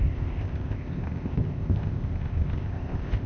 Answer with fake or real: fake